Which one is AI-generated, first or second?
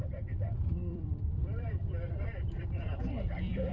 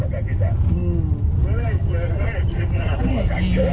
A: first